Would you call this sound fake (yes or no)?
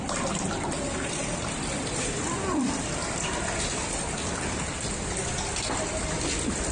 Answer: yes